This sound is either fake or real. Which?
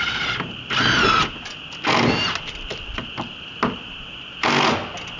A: real